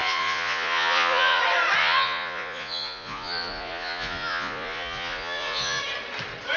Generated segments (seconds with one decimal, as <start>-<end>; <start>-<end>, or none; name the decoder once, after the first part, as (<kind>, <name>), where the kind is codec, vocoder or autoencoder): 0.0-1.4 (vocoder, Vocos); 1.8-5.8